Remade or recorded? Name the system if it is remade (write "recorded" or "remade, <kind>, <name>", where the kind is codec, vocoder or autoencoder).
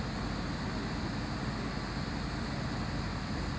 recorded